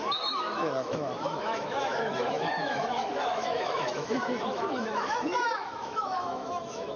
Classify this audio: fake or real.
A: fake